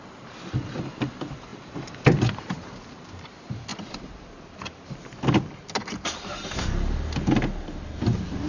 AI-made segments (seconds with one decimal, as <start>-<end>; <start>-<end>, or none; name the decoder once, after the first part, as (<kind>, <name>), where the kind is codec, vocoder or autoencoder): 0.0-1.5 (vocoder, BigVGAN v2); 2.5-3.7